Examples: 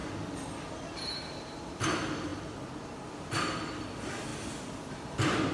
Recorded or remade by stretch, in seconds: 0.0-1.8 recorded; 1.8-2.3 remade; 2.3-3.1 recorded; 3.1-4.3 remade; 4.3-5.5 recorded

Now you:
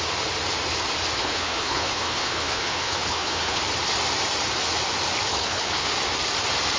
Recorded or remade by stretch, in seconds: 0.0-1.2 recorded; 1.2-3.6 remade; 3.6-5.3 recorded; 5.3-5.9 remade; 5.9-6.8 recorded

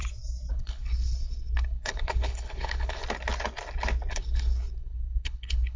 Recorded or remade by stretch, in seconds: 0.0-0.5 recorded; 0.5-3.0 remade; 3.0-4.1 recorded; 4.1-5.8 remade

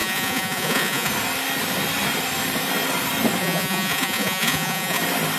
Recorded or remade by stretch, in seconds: 0.0-1.1 remade; 1.1-3.4 recorded; 3.4-5.0 remade; 5.0-5.4 recorded

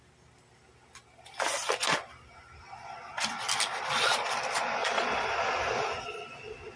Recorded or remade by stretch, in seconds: 0.0-4.8 recorded; 4.8-5.3 remade; 5.3-6.8 recorded